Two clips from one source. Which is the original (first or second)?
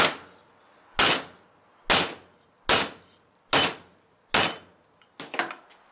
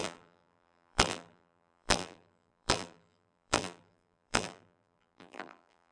first